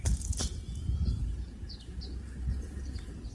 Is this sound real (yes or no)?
yes